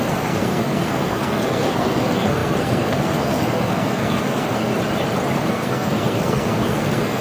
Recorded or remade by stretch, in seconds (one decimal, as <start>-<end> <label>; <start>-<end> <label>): 0.0-4.7 remade; 4.7-5.5 recorded; 5.5-7.2 remade